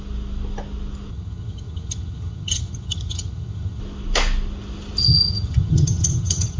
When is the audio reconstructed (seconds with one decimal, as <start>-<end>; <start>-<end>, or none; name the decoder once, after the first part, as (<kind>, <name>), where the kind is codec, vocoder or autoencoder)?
1.1-3.8 (vocoder, HiFi-GAN); 5.0-6.6